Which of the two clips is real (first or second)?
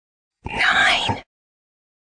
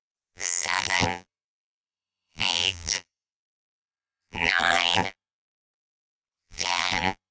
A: first